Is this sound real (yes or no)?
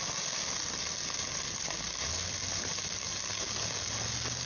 yes